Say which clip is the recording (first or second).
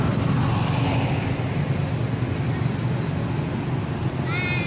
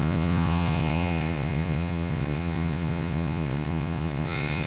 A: first